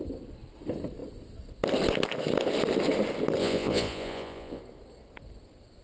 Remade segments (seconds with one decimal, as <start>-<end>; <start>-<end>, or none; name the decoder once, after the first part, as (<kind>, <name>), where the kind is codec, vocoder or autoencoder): 3.4-4.6 (vocoder, Vocos)